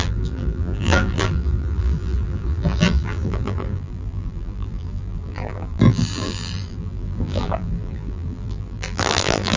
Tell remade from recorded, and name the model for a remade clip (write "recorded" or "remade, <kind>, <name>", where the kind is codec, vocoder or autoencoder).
remade, vocoder, BigVGAN v2